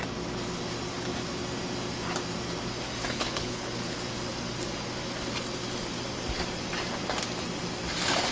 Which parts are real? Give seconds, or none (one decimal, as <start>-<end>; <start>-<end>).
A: 0.0-3.0; 3.9-8.3